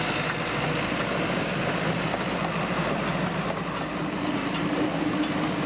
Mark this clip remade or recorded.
recorded